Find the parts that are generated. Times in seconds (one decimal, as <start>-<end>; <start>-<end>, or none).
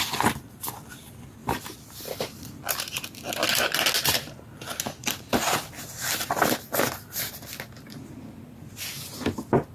1.4-2.5; 5.0-6.3